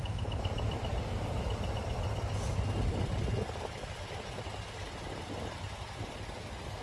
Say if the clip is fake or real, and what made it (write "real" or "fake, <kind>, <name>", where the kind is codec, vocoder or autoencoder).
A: real